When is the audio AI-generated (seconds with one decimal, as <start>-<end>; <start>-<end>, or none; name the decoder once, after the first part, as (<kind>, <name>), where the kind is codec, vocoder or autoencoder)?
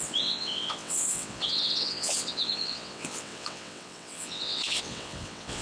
0.0-5.6 (vocoder, WaveNeXt)